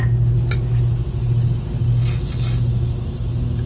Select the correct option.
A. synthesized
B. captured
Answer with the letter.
B